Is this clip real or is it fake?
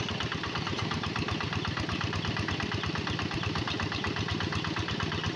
fake